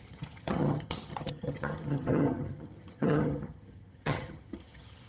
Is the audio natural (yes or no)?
no